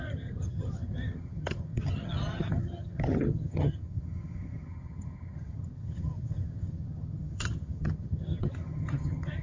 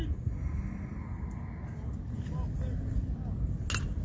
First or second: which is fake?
first